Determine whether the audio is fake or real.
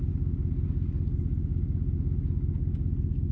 real